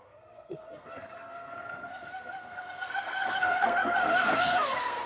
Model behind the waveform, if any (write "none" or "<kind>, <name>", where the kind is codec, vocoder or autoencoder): codec, SNAC